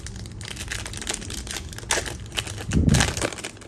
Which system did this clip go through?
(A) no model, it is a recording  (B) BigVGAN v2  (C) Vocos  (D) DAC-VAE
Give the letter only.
A